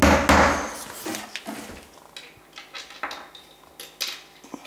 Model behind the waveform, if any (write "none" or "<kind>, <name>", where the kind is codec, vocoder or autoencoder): none